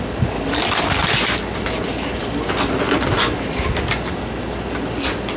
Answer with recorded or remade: recorded